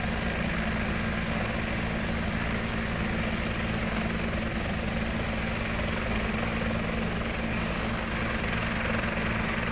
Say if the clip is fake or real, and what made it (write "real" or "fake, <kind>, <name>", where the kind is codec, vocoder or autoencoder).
real